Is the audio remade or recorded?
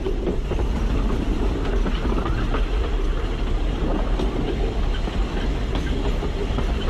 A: recorded